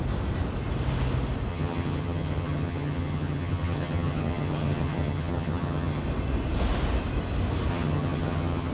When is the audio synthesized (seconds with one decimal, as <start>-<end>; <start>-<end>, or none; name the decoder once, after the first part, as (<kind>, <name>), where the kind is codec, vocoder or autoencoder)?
1.5-6.0 (vocoder, HiFi-GAN); 7.7-8.7